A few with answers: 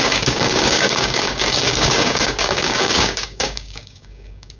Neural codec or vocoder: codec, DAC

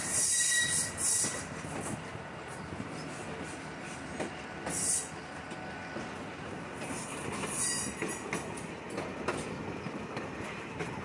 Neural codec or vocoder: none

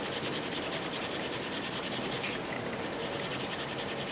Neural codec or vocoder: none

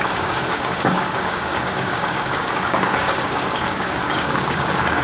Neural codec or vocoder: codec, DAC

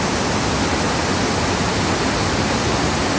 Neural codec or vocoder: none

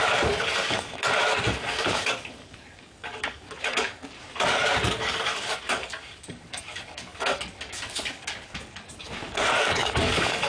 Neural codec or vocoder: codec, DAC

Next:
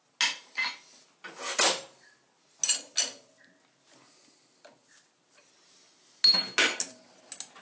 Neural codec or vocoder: none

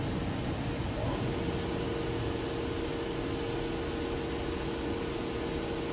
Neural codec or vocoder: none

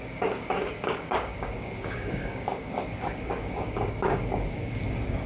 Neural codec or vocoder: codec, DAC